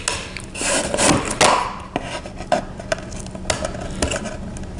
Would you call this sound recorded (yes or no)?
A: yes